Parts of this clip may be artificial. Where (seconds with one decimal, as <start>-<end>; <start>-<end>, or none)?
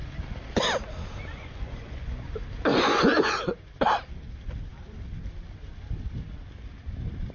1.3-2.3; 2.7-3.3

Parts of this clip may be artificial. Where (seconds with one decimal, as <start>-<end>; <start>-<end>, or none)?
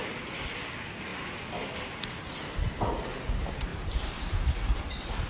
3.7-4.8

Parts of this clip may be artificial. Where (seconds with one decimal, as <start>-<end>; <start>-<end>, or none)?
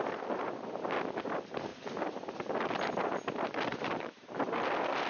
3.7-4.3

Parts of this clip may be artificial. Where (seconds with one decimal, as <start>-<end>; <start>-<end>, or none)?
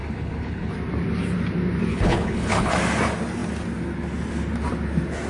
0.0-0.7; 1.9-2.7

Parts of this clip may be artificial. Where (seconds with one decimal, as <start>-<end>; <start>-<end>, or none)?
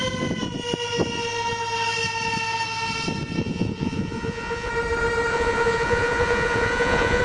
3.4-4.7; 5.3-7.2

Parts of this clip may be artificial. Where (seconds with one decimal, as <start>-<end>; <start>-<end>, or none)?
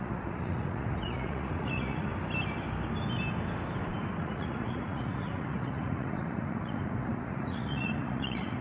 0.0-2.1; 4.2-8.6